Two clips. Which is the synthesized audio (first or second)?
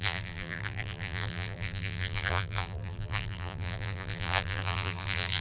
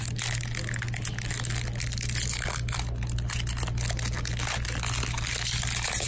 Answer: first